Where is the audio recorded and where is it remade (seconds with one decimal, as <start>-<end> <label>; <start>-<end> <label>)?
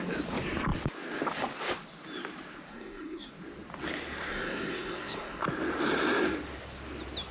0.0-2.7 recorded; 2.7-3.3 remade; 3.3-4.3 recorded; 4.3-5.4 remade; 5.4-7.3 recorded